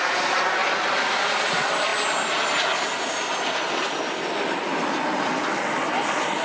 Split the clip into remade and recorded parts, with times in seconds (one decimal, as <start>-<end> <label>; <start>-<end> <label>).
0.0-6.4 recorded